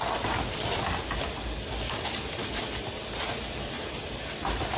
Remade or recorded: recorded